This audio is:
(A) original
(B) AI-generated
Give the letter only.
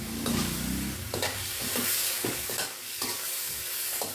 B